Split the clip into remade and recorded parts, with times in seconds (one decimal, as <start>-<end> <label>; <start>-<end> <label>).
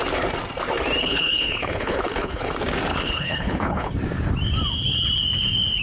0.0-1.0 recorded; 1.0-2.5 remade; 2.5-2.9 recorded; 2.9-3.9 remade; 3.9-5.8 recorded